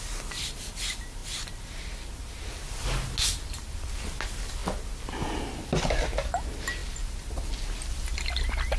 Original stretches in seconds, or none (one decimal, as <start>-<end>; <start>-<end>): 0.0-8.8